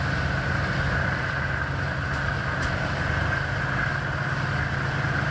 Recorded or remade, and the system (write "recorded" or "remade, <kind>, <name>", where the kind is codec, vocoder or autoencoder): recorded